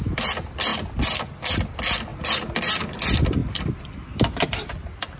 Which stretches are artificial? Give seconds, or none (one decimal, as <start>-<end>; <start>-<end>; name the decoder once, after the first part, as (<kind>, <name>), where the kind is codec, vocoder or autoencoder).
2.1-2.6 (vocoder, BigVGAN v2); 3.4-4.7